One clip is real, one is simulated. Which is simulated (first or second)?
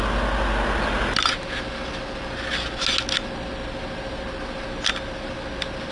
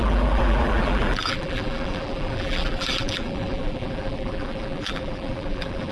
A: second